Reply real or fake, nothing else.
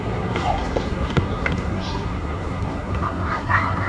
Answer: fake